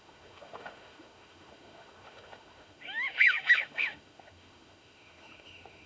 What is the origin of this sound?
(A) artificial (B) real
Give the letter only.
A